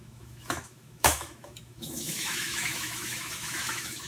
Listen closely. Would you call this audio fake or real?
fake